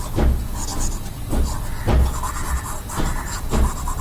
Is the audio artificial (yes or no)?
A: no